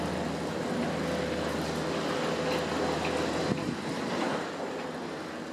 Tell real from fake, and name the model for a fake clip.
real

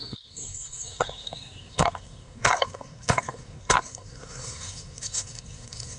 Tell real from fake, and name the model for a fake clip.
fake, codec, SNAC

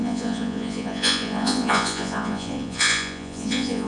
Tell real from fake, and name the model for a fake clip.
fake, vocoder, Vocos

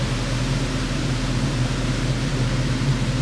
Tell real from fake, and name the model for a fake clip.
real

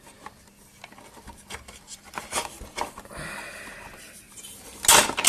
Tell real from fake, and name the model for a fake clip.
real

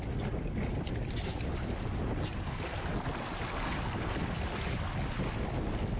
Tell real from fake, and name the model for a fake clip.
real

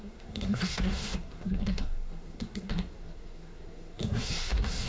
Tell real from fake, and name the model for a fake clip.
fake, codec, SNAC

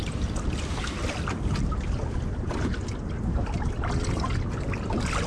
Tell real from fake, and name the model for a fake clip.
real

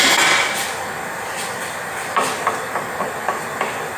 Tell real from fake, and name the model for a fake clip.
real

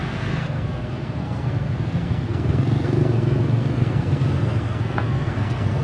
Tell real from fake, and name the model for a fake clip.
fake, codec, SNAC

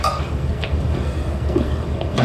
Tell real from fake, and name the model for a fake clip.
fake, codec, SNAC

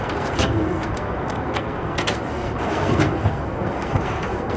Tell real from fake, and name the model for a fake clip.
fake, codec, SNAC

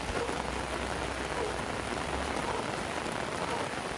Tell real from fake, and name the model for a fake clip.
real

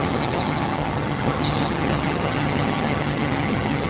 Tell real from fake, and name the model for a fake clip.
fake, vocoder, HiFi-GAN